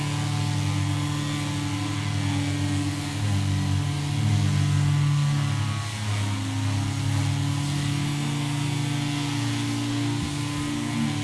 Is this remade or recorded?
recorded